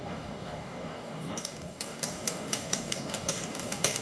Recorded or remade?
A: remade